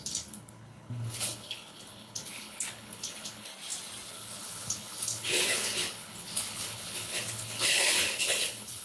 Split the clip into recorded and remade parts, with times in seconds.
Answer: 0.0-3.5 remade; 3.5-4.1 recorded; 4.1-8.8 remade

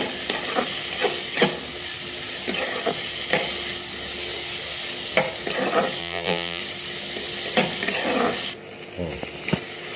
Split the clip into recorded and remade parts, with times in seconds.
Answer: 0.0-6.0 recorded; 6.0-6.6 remade; 6.6-10.0 recorded

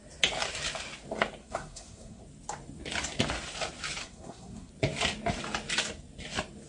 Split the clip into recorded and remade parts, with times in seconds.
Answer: 0.0-1.4 recorded; 1.4-2.2 remade; 2.2-4.0 recorded; 4.0-4.7 remade; 4.7-6.7 recorded

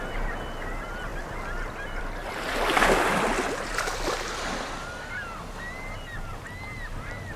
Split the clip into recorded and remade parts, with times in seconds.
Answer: 0.0-7.4 recorded

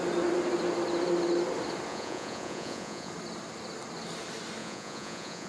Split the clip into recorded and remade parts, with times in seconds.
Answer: 0.0-1.9 recorded; 1.9-3.1 remade; 3.1-4.6 recorded; 4.6-5.5 remade

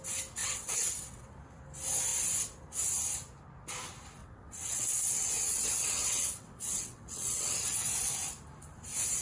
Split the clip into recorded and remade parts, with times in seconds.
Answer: 0.0-0.4 recorded; 0.4-1.3 remade; 1.3-4.2 recorded; 4.2-8.1 remade; 8.1-9.2 recorded

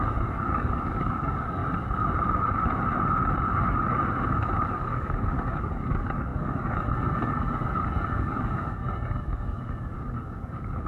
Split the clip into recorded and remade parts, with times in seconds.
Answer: 0.0-1.6 remade; 1.6-4.8 recorded; 4.8-10.9 remade